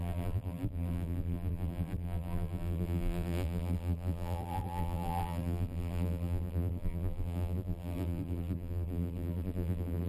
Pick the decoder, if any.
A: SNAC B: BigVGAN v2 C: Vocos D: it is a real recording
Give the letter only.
B